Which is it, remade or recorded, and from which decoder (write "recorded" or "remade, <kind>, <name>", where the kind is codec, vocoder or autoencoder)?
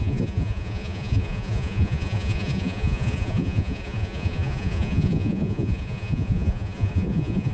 remade, vocoder, Vocos